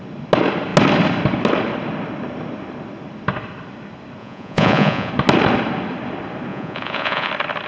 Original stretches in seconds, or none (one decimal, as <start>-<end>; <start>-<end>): 0.0-4.2; 5.1-6.5; 7.3-7.7

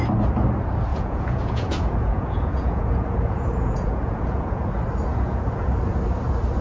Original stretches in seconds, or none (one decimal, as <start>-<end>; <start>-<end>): 0.0-0.9; 4.6-5.1; 5.7-6.6

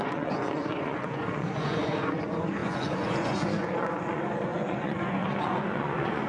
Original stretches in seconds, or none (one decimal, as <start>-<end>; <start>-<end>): none

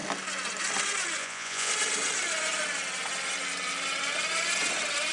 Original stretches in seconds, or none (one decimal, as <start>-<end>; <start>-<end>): 0.0-1.2; 1.7-5.1

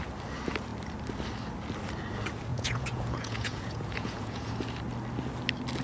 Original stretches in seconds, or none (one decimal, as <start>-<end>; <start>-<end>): 0.0-2.5; 4.5-5.8